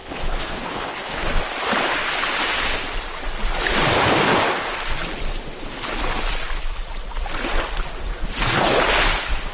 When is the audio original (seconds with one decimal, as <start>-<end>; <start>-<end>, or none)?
1.4-9.5